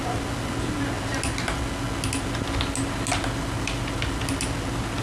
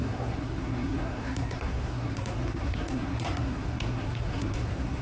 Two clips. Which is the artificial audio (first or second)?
second